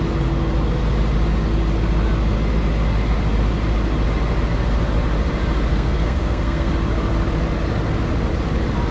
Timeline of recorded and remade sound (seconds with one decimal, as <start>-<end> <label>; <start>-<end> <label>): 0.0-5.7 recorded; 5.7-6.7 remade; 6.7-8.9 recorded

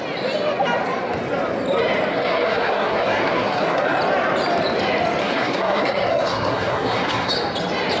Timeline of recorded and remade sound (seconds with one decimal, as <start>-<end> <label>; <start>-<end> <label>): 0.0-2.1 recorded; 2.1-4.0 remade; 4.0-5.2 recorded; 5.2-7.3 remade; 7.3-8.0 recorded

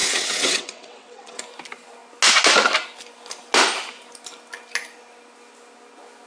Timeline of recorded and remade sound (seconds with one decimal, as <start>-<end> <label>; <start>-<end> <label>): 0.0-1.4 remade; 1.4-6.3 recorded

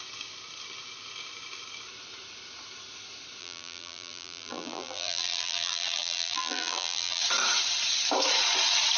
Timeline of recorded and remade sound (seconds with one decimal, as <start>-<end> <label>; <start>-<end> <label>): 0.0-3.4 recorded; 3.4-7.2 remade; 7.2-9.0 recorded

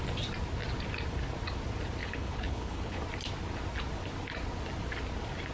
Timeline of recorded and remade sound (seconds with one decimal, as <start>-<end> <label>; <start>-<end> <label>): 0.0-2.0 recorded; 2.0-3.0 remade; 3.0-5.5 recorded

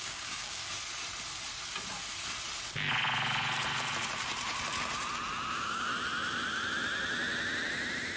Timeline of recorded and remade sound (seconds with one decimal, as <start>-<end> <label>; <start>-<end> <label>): 0.0-0.6 remade; 0.6-5.5 recorded; 5.5-5.9 remade; 5.9-8.2 recorded